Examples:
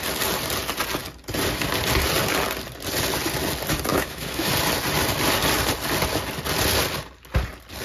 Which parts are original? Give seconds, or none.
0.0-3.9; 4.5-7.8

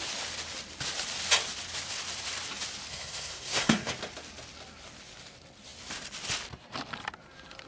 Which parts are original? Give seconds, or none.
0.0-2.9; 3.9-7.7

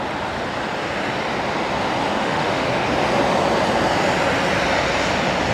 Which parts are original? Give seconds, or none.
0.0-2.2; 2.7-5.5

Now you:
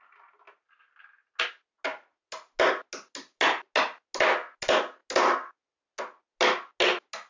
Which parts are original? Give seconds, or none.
0.0-7.3